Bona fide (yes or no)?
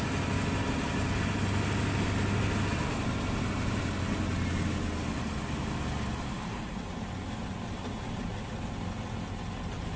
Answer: yes